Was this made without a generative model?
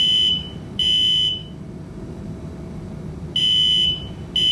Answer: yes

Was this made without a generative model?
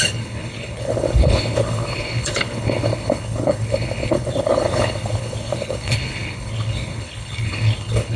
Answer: no